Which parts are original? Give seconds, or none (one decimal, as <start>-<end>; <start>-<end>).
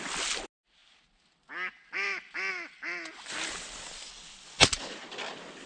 0.0-5.7